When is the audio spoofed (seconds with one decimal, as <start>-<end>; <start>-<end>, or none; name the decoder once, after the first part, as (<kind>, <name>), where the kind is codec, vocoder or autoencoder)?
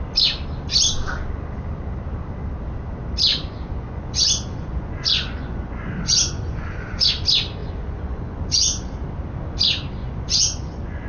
3.3-7.1 (vocoder, Vocos); 7.6-8.9; 10.0-11.1